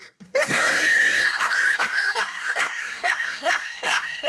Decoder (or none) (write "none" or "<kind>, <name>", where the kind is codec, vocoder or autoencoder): codec, SNAC